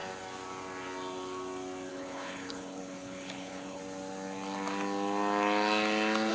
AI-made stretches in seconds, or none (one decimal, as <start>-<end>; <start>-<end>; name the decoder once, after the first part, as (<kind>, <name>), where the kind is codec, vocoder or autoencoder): 1.9-3.8 (codec, HILCodec)